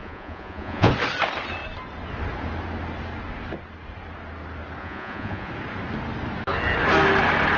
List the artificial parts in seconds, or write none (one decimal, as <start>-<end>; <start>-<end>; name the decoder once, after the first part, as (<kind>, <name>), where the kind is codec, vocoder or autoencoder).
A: 0.0-0.9 (vocoder, Vocos); 4.8-5.5